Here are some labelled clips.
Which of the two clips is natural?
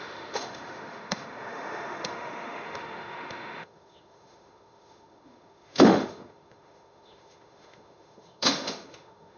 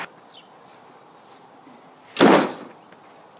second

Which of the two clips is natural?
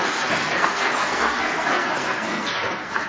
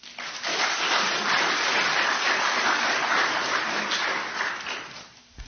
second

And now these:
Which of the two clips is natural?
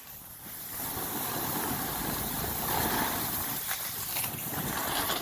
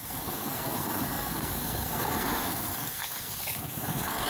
first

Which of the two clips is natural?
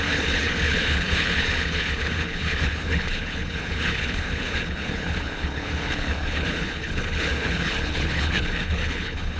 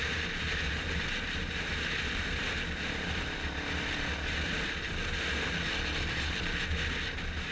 second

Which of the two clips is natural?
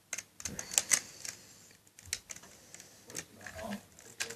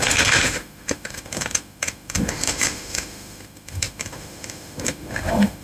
first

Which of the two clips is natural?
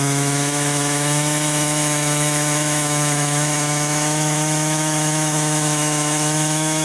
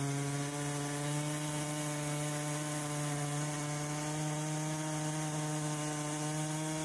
second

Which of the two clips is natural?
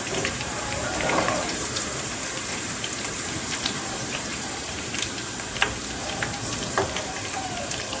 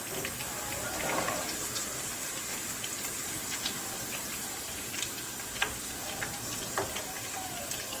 second